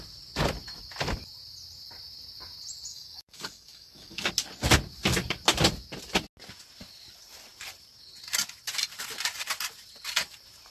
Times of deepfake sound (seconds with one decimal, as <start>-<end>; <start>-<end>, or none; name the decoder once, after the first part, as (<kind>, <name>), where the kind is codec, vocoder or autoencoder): 2.9-4.3 (codec, DAC)